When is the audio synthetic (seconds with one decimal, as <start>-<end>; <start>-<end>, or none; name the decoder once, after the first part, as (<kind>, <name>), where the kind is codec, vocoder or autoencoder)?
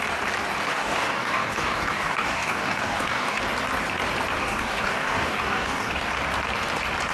0.6-3.4 (codec, DAC); 4.4-6.1